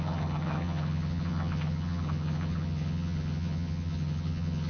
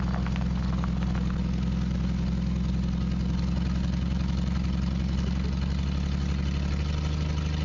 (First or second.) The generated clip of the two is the first